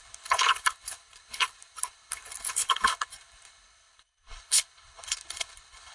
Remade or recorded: remade